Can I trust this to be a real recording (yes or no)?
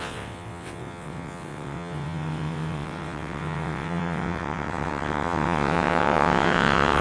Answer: no